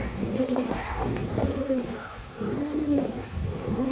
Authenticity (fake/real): fake